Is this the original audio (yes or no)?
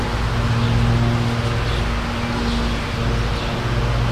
yes